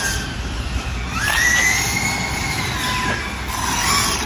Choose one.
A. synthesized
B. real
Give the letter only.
B